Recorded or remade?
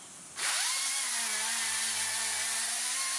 recorded